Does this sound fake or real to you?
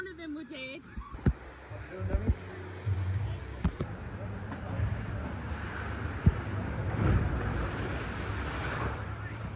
real